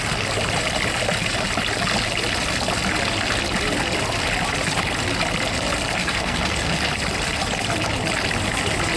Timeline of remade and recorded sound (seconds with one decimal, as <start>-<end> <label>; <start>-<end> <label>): 0.0-6.0 recorded; 6.0-6.7 remade; 6.7-9.0 recorded

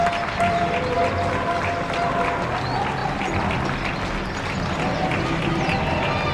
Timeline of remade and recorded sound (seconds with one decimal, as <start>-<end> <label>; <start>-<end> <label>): 0.0-6.3 recorded

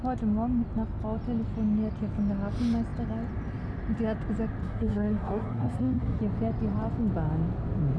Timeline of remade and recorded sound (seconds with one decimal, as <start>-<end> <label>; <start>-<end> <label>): 0.0-4.6 recorded; 4.6-6.2 remade; 6.2-8.0 recorded

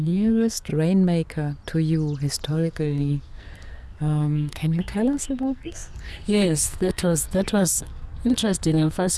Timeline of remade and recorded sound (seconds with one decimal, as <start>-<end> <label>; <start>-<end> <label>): 0.0-0.7 remade; 0.7-2.5 recorded; 2.5-9.2 remade

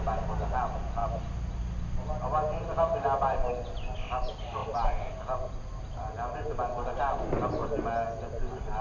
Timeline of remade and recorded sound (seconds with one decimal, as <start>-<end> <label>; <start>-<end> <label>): 0.0-8.8 recorded

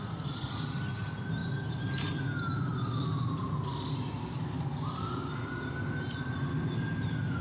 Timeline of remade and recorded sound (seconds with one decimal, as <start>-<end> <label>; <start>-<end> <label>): 0.0-7.4 recorded

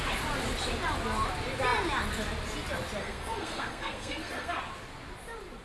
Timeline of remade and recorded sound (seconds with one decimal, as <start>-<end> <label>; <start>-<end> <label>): 0.0-3.0 recorded; 3.0-4.6 remade; 4.6-5.6 recorded

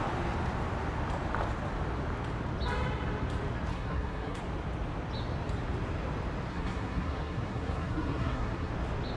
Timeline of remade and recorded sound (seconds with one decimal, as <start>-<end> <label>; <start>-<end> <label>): 0.0-3.7 recorded; 3.7-4.4 remade; 4.4-6.5 recorded; 6.5-8.7 remade; 8.7-9.2 recorded